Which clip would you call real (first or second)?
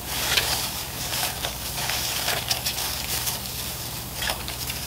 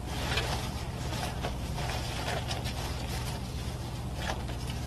second